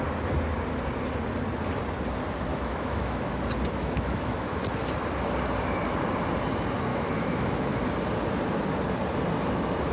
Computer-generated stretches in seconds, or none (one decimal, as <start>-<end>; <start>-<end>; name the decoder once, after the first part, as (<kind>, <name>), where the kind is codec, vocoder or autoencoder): 2.5-3.3 (autoencoder, DAC-VAE); 3.7-4.6; 6.9-7.8